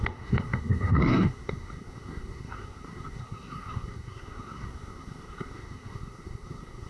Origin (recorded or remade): remade